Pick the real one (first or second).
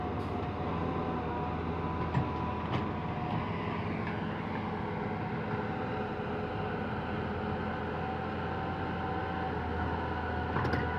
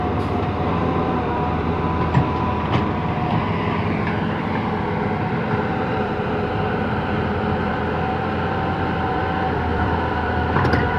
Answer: first